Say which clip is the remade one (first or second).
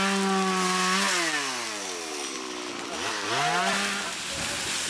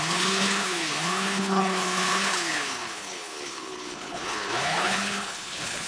second